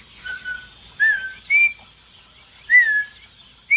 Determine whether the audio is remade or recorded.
recorded